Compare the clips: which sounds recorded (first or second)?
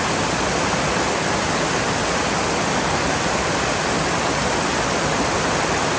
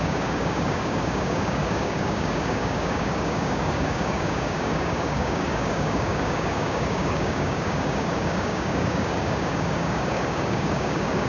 first